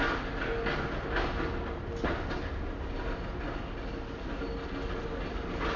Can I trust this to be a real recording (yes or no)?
yes